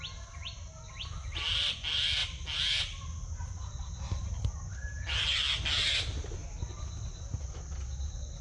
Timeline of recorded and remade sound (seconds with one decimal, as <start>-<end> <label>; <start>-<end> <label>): 0.0-8.4 recorded